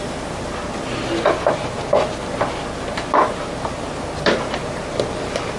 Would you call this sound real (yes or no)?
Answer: yes